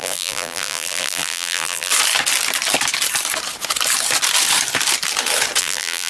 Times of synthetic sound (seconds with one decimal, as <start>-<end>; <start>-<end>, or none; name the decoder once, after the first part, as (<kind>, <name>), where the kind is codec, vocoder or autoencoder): 0.0-1.9 (vocoder, BigVGAN v2); 5.6-6.1